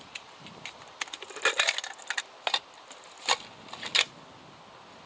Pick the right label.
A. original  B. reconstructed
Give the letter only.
A